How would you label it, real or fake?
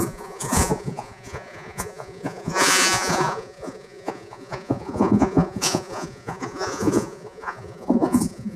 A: fake